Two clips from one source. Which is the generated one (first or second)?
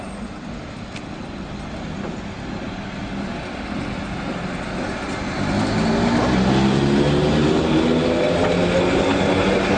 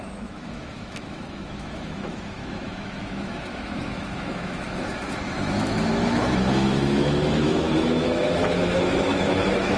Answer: second